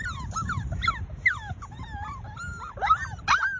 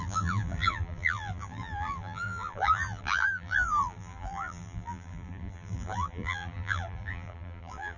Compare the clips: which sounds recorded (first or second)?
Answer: first